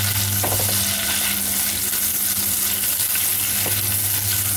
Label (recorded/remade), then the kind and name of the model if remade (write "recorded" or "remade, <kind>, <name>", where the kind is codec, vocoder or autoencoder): recorded